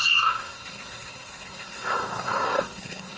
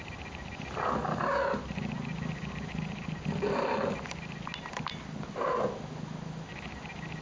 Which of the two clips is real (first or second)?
second